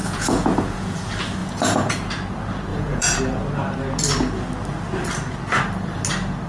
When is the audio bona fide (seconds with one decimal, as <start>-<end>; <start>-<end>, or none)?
1.0-1.4; 2.1-2.7; 3.2-6.5